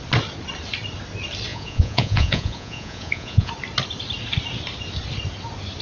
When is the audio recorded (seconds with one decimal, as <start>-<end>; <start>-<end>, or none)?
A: 0.0-1.5; 3.5-5.8